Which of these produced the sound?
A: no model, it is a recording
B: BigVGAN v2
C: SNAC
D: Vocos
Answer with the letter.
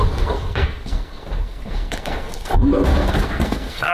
C